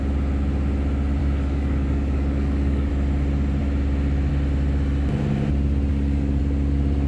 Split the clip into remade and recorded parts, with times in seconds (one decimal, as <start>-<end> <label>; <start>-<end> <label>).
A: 0.0-1.2 recorded; 1.2-2.9 remade; 2.9-5.9 recorded; 5.9-6.4 remade; 6.4-7.1 recorded